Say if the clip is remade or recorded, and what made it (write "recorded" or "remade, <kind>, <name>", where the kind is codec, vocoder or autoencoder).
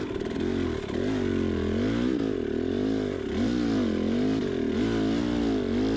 recorded